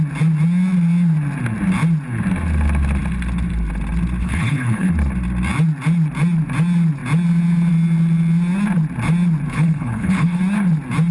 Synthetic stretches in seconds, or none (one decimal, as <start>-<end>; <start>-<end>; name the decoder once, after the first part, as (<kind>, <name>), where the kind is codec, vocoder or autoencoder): 4.2-4.9 (codec, HILCodec); 9.5-10.4